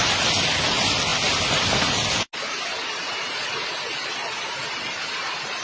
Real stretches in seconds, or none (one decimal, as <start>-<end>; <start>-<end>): 0.0-5.6